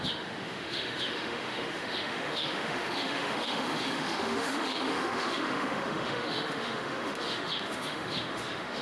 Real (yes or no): no